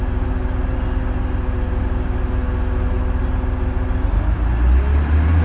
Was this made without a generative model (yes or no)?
yes